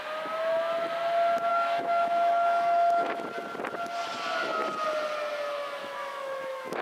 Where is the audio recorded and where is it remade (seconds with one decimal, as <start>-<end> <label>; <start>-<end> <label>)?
0.0-1.5 recorded; 1.5-3.2 remade; 3.2-5.8 recorded; 5.8-6.8 remade